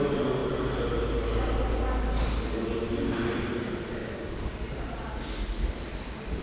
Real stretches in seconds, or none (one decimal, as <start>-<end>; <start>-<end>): 0.0-4.0; 5.2-6.4